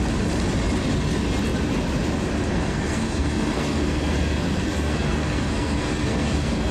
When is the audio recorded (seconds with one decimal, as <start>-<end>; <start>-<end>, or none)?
0.0-2.5